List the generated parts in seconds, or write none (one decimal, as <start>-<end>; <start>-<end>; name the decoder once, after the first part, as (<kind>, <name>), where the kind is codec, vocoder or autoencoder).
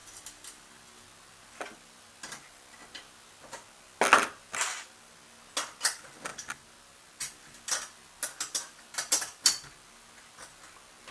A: none